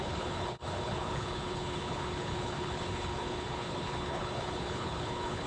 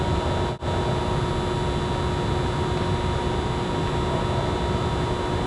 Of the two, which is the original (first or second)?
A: second